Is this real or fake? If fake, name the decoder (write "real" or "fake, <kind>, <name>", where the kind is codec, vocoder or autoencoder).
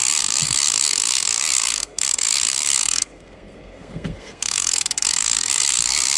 fake, codec, SNAC